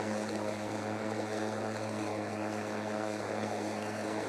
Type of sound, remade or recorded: remade